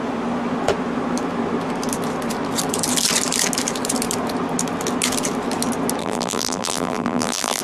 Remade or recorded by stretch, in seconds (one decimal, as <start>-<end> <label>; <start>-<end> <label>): 0.0-6.0 recorded; 6.0-7.6 remade